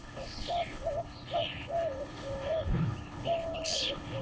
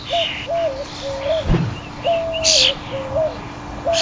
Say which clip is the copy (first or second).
first